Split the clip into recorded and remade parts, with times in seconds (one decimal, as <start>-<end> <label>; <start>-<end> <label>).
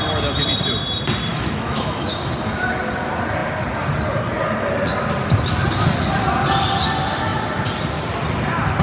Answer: 0.0-1.3 recorded; 1.3-2.1 remade; 2.1-8.8 recorded